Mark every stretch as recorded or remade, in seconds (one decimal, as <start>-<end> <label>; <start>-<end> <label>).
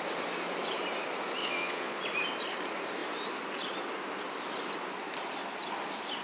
0.0-1.4 recorded; 1.4-2.0 remade; 2.0-6.2 recorded